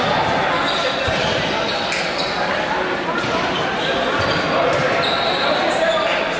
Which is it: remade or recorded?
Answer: recorded